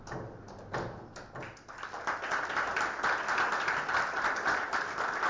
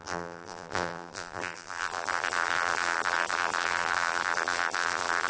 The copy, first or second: second